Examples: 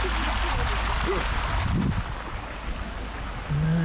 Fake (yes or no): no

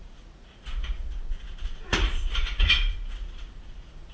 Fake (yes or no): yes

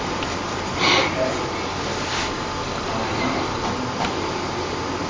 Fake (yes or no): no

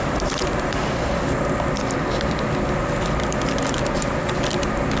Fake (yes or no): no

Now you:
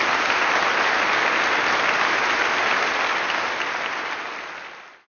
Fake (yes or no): no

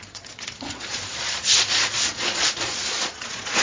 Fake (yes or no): yes